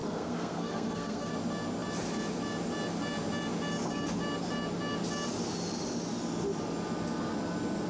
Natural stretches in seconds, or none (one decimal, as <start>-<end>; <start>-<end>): 1.3-7.9